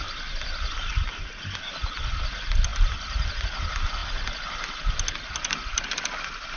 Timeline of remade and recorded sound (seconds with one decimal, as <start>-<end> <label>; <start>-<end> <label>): 0.0-6.6 recorded